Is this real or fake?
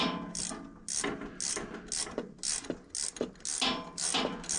real